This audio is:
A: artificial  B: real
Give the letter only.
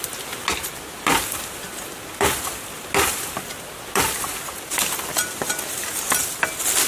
B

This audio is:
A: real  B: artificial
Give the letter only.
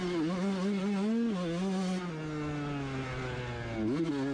A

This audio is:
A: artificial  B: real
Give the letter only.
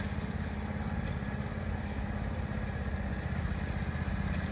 B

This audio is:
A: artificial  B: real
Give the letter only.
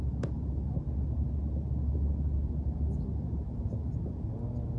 B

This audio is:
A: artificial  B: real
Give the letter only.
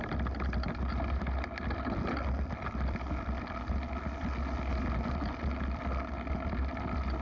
B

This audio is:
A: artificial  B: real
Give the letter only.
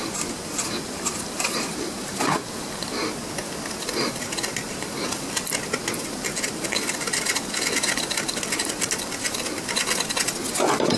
B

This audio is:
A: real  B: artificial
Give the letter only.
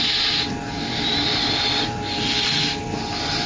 A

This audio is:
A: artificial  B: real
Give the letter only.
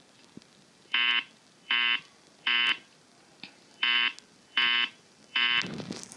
A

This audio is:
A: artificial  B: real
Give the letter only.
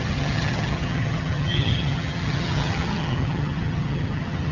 A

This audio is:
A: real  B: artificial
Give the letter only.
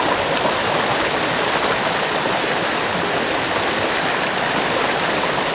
A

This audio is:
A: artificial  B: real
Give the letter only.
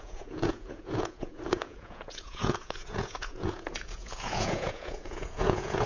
A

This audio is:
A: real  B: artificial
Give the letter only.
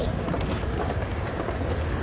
A